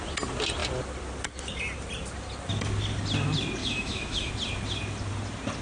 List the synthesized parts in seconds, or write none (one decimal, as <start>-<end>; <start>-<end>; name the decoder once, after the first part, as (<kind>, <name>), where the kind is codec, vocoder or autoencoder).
3.6-4.3 (autoencoder, DAC-VAE)